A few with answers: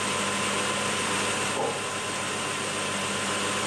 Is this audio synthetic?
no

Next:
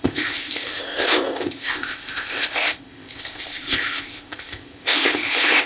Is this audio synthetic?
yes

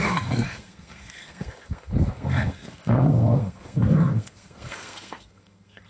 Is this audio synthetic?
yes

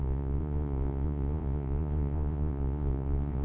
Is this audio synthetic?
yes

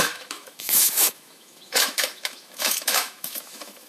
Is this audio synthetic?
yes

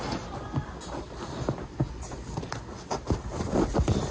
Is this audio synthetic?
no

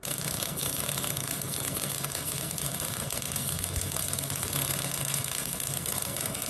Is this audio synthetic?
yes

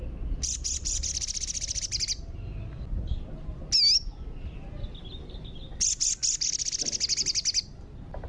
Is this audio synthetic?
no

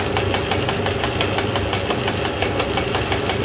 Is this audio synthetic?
no